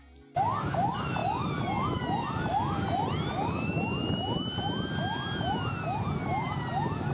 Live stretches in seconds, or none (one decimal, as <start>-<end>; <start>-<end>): 0.0-7.1